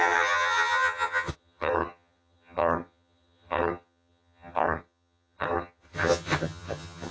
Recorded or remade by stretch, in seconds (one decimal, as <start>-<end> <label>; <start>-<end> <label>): 0.0-7.1 remade